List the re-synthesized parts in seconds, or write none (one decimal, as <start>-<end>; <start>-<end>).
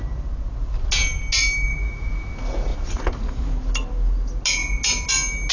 1.7-2.3; 2.7-3.5